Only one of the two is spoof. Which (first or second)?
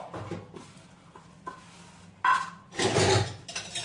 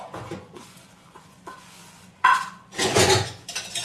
second